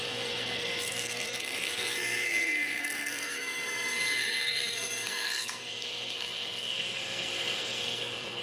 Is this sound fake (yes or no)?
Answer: yes